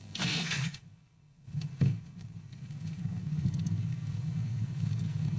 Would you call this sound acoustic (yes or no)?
no